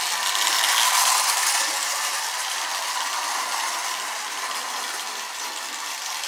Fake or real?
real